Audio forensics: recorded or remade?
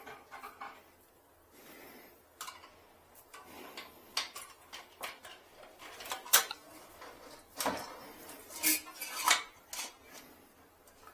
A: recorded